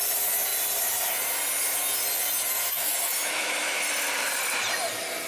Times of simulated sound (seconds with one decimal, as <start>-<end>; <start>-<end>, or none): 2.7-3.7